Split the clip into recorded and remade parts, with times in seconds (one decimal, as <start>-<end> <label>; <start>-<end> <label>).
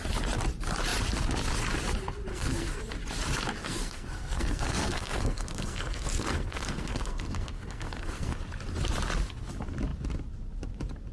0.0-2.3 recorded; 2.3-2.9 remade; 2.9-3.6 recorded; 3.6-8.4 remade; 8.4-11.1 recorded